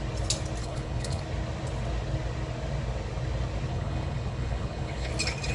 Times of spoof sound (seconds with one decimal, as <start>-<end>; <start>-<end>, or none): 0.6-1.2; 3.7-5.1